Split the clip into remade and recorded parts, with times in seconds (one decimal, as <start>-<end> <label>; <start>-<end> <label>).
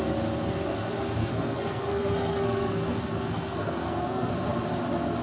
0.0-1.2 recorded; 1.2-4.3 remade; 4.3-5.2 recorded